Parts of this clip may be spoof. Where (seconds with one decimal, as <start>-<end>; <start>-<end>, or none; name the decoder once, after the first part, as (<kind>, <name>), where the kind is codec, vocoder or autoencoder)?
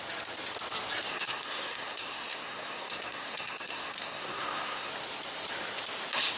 1.1-4.9 (codec, SNAC)